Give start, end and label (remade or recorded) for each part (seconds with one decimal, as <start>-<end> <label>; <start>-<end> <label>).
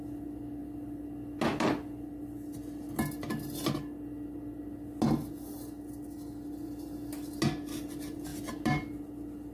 0.0-9.5 recorded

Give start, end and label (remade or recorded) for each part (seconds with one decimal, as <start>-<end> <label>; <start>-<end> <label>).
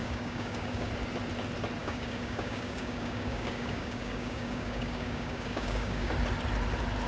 0.0-0.9 remade; 0.9-1.8 recorded; 1.8-6.1 remade; 6.1-7.1 recorded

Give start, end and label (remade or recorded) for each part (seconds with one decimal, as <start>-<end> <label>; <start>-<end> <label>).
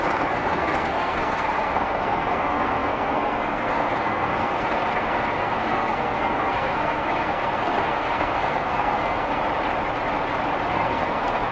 0.0-9.4 remade; 9.4-10.7 recorded; 10.7-11.5 remade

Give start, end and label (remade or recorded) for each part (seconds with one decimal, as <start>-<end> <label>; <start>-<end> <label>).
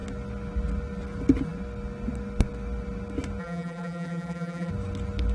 0.0-3.4 recorded; 3.4-4.7 remade; 4.7-5.3 recorded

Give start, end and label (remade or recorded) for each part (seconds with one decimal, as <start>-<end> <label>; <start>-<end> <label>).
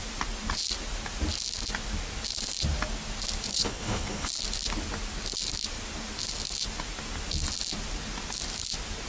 0.0-3.5 recorded; 3.5-4.3 remade; 4.3-9.1 recorded